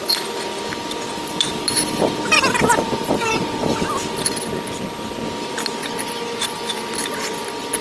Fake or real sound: real